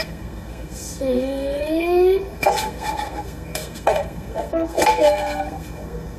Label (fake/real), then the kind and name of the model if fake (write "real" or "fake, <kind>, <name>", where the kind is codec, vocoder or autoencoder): fake, codec, SNAC